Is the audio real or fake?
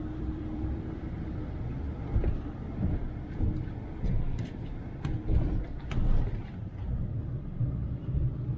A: fake